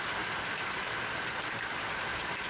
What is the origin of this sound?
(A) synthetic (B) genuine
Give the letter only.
A